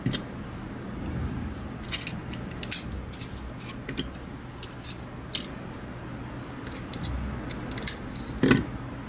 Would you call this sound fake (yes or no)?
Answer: no